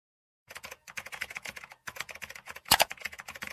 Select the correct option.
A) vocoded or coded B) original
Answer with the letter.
A